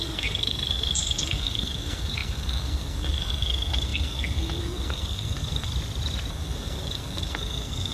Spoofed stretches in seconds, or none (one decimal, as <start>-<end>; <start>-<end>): 0.0-5.7; 6.3-7.9